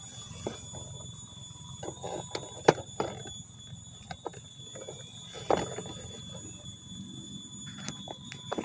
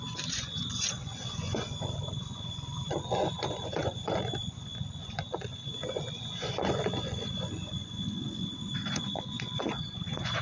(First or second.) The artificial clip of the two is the second